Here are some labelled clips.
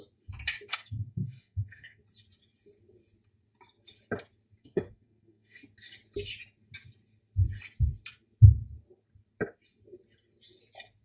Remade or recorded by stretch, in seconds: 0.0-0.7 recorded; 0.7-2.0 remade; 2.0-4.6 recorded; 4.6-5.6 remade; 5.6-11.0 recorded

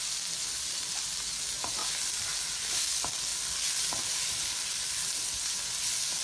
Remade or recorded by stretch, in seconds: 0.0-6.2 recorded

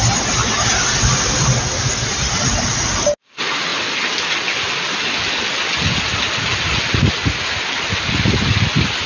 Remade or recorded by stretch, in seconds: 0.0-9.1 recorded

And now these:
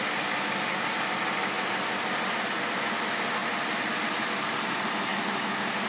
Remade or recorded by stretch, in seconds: 0.0-5.9 recorded

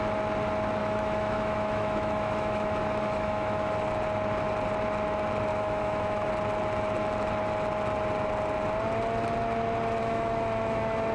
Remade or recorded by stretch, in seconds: 0.0-0.8 recorded; 0.8-3.7 remade; 3.7-5.5 recorded; 5.5-6.3 remade; 6.3-10.0 recorded; 10.0-11.1 remade

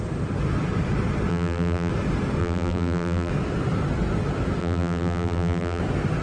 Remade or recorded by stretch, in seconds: 0.0-1.3 recorded; 1.3-1.9 remade; 1.9-2.4 recorded; 2.4-3.3 remade; 3.3-4.6 recorded; 4.6-5.8 remade; 5.8-6.2 recorded

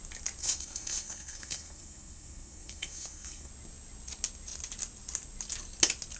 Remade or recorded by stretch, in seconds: 0.0-0.4 recorded; 0.4-3.5 remade; 3.5-6.2 recorded

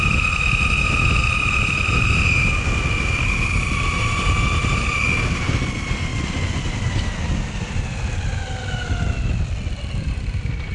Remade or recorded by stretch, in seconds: 0.0-10.7 recorded